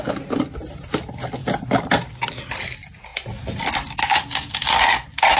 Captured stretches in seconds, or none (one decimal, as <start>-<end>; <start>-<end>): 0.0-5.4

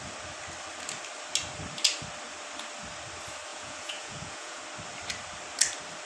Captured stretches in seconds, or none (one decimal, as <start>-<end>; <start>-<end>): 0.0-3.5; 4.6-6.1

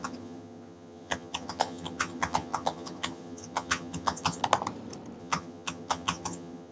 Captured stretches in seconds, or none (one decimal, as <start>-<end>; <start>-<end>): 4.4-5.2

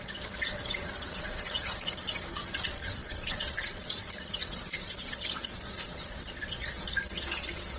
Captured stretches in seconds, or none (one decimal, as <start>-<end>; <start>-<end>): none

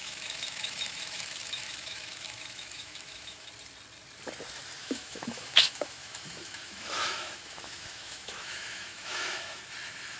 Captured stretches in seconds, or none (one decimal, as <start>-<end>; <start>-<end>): 3.5-4.8; 9.6-10.2

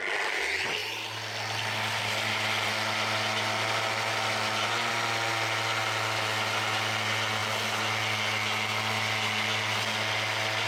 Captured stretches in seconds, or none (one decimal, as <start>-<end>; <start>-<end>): 0.0-10.7

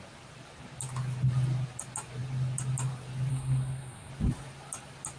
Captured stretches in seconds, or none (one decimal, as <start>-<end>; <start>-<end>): 0.0-3.3; 4.1-5.2

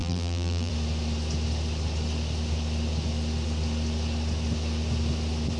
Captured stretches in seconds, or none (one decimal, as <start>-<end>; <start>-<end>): 0.7-5.6